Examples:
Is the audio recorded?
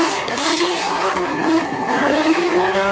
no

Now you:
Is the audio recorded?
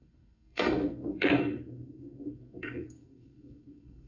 no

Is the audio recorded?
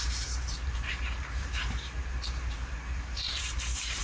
no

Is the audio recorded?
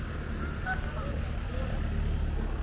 yes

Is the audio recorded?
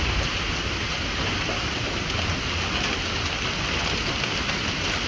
yes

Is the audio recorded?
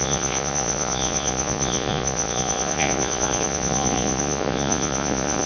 no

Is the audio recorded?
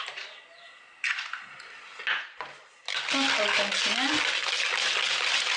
yes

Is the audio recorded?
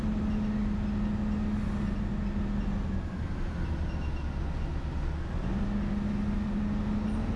yes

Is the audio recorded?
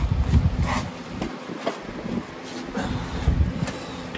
yes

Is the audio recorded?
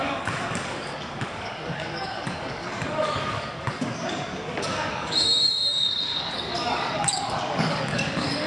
no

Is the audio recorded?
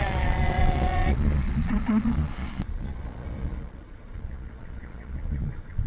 no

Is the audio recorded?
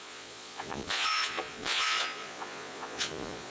no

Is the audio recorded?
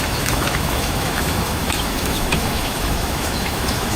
no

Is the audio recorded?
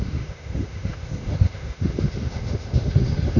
no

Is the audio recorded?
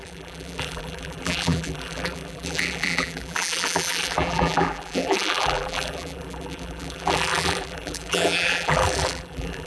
no